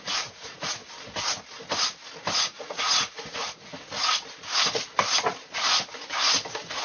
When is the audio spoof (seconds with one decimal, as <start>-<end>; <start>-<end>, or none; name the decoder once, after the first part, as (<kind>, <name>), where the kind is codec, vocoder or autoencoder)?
0.0-0.8 (vocoder, Vocos); 2.4-3.7